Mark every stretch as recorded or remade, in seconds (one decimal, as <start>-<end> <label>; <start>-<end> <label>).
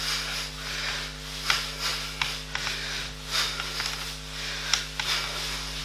0.0-5.8 recorded